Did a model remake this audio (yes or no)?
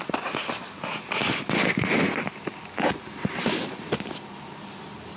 no